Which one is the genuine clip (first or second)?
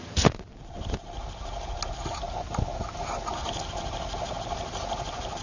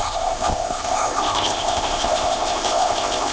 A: first